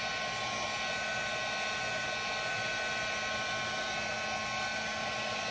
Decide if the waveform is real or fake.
real